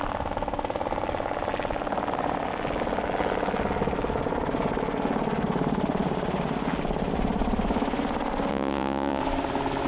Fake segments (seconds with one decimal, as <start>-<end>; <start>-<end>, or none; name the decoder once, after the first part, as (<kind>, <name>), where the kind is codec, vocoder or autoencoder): 8.5-9.2 (vocoder, Vocos)